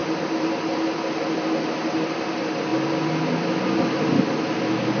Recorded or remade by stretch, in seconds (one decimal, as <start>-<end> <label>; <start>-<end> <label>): 0.0-5.0 recorded